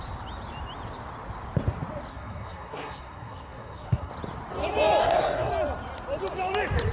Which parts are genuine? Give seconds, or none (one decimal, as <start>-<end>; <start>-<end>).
0.0-2.1; 4.1-5.0; 5.5-6.9